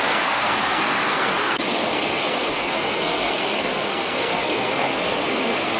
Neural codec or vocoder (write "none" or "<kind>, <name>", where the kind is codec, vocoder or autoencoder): codec, SNAC